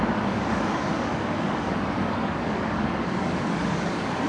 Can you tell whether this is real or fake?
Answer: fake